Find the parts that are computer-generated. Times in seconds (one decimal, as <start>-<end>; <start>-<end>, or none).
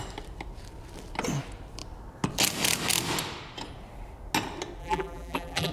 4.8-5.7